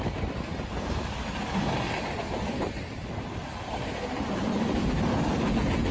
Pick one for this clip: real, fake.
real